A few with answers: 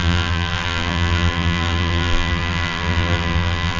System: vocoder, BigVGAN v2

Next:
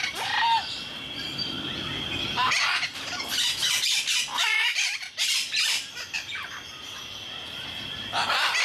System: vocoder, BigVGAN v2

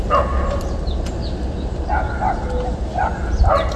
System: none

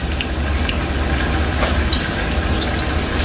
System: none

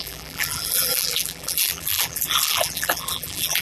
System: vocoder, BigVGAN v2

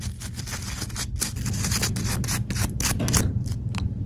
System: vocoder, BigVGAN v2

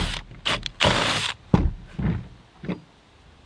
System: none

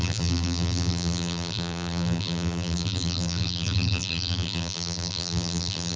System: vocoder, BigVGAN v2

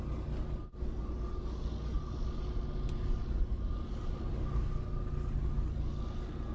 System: none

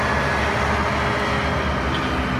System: none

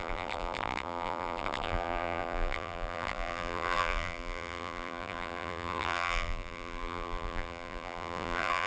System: vocoder, BigVGAN v2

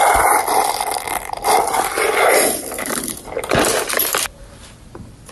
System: vocoder, BigVGAN v2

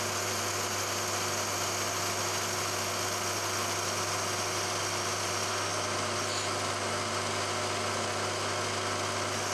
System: none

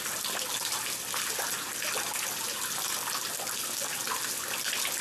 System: none